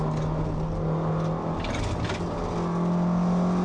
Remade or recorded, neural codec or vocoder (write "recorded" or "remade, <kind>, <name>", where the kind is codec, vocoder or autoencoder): recorded